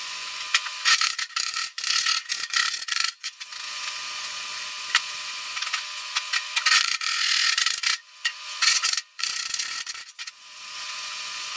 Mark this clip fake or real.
fake